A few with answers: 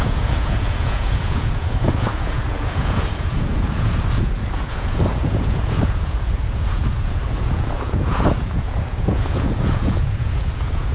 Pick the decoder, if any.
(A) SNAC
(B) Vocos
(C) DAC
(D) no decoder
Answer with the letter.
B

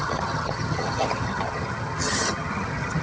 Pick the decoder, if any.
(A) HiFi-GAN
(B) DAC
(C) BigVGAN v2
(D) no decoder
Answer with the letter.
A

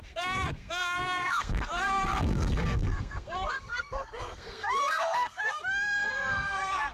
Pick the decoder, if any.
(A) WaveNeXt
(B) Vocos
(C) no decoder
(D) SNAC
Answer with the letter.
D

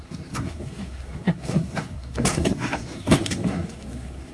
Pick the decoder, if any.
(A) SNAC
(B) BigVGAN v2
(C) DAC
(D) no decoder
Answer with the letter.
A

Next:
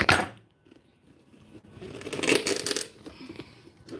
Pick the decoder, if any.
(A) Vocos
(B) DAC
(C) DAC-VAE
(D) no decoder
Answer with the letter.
D